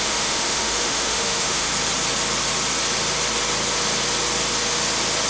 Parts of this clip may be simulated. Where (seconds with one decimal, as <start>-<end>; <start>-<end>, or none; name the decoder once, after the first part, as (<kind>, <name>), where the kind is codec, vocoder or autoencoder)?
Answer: 0.0-1.7 (autoencoder, DAC-VAE)